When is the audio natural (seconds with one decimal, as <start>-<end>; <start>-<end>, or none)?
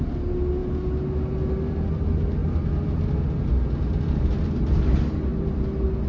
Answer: 0.0-6.1